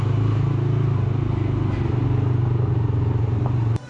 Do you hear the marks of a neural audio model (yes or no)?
no